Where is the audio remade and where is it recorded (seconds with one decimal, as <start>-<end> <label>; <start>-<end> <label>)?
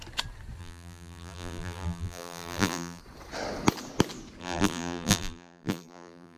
0.0-0.6 recorded; 0.6-3.0 remade; 3.0-4.4 recorded; 4.4-6.4 remade